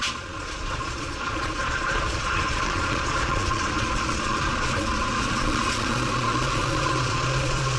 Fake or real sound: fake